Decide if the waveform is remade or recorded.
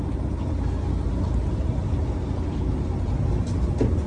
recorded